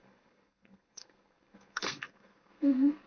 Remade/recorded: remade